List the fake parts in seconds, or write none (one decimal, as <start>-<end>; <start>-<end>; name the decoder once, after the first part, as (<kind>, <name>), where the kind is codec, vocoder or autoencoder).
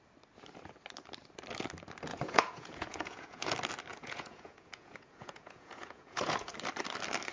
2.1-3.5 (vocoder, Vocos); 3.9-6.5